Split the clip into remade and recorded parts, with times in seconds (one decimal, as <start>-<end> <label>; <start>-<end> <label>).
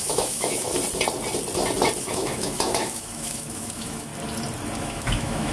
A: 0.0-0.7 remade; 0.7-2.0 recorded; 2.0-4.1 remade; 4.1-4.8 recorded; 4.8-5.5 remade